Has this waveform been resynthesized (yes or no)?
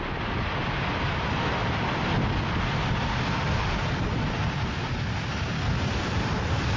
no